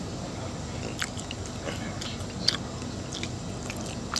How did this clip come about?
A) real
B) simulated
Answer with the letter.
A